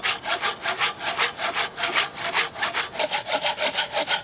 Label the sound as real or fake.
real